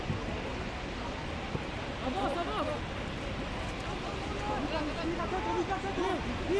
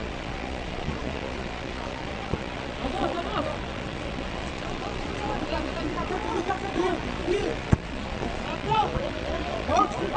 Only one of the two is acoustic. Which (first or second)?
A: first